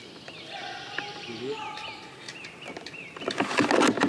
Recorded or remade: recorded